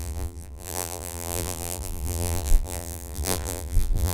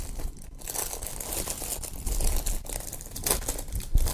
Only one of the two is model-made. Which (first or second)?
first